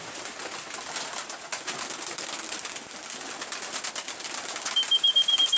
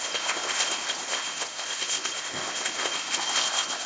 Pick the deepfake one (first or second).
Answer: second